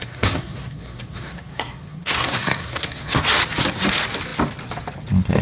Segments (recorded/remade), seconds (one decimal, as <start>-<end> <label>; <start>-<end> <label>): 0.0-3.2 remade; 3.2-5.4 recorded